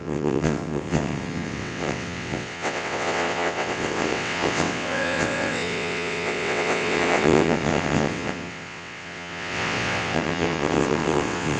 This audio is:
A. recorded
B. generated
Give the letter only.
B